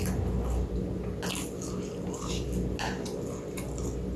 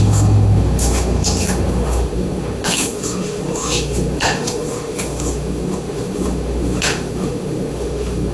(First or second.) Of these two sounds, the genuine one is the first